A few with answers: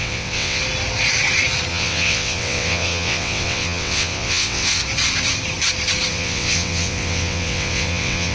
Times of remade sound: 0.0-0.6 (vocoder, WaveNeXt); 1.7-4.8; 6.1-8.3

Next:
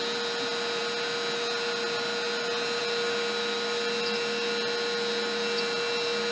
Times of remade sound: none

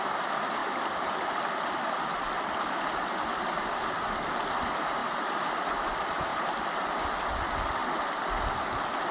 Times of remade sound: 0.6-2.2 (vocoder, BigVGAN v2); 5.0-5.5; 7.8-8.5

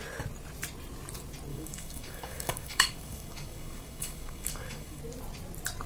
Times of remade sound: 1.5-5.0 (codec, DAC)